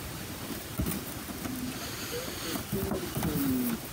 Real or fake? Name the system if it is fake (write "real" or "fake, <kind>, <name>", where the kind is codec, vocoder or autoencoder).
real